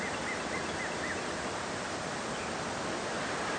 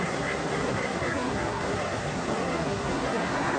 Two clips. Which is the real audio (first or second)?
first